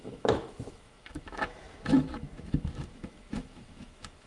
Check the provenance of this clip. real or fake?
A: fake